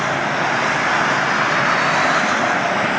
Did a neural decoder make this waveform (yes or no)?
no